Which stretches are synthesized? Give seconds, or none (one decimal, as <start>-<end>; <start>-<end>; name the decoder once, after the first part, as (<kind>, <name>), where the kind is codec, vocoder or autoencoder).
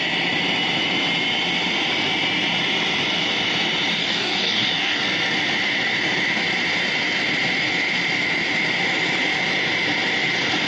4.0-5.0 (codec, DAC)